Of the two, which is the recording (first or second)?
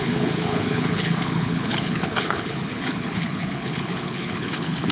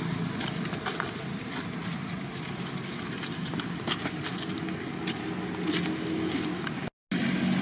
second